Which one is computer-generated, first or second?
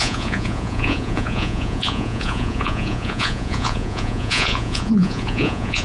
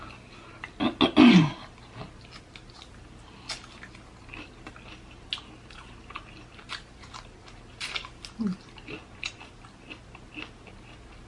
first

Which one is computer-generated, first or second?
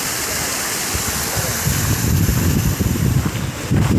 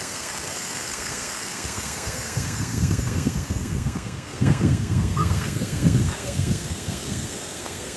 second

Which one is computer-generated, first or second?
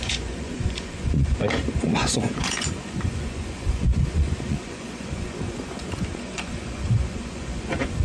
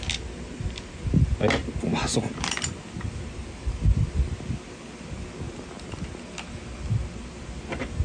first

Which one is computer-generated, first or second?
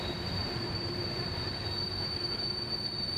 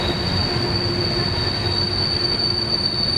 first